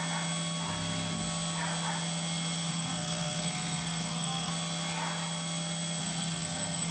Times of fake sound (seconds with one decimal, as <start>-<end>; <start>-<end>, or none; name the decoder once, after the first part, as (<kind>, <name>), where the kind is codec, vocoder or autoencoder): 2.7-4.5 (codec, SNAC); 6.0-6.9